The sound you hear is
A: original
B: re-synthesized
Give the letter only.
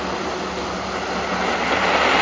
A